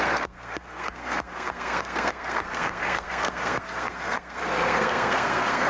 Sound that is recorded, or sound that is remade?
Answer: remade